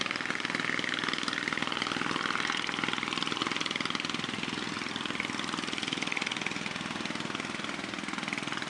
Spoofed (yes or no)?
no